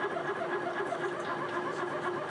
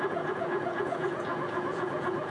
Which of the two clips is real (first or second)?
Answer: first